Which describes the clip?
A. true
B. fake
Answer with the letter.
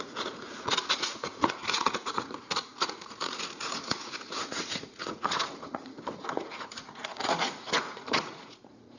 B